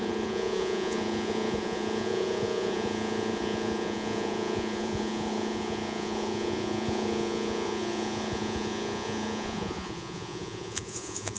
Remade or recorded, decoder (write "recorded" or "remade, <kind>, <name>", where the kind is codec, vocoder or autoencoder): remade, vocoder, Vocos